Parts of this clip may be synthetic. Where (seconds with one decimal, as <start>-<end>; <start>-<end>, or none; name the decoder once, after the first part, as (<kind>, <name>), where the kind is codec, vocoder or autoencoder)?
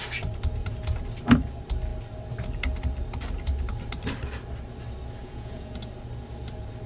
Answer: 5.2-5.9 (vocoder, Vocos)